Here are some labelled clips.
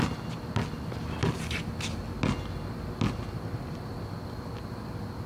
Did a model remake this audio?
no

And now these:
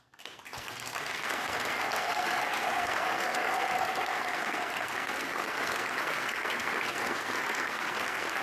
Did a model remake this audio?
yes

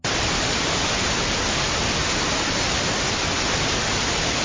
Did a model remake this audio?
no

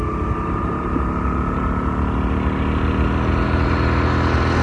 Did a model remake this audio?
no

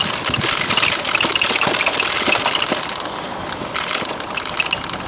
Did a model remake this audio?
no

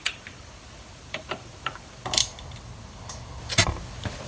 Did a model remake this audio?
yes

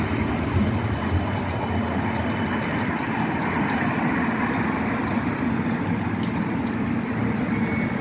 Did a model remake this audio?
no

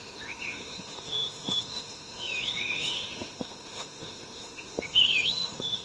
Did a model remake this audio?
yes